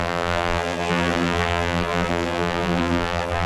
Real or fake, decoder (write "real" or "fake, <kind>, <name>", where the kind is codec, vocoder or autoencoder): fake, vocoder, BigVGAN v2